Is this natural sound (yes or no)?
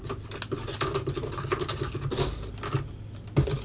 yes